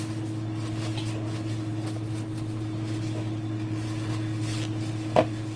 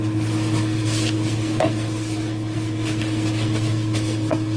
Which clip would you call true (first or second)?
first